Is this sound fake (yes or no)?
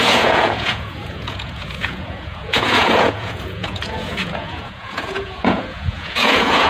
yes